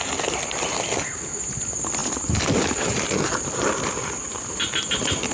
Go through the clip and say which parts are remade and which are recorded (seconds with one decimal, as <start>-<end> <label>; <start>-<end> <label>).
0.0-5.3 recorded